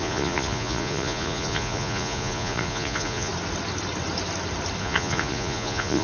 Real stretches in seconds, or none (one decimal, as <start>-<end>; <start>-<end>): 3.3-4.8